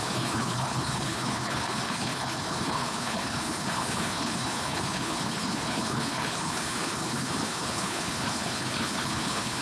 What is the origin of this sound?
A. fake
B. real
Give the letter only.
A